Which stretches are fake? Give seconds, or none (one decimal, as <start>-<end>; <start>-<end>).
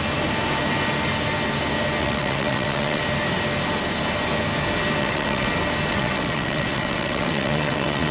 2.0-3.0; 5.0-5.5; 5.9-8.1